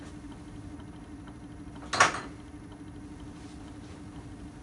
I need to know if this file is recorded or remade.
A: recorded